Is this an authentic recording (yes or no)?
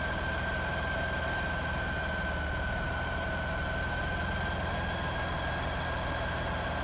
yes